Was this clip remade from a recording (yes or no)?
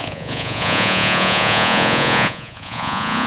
yes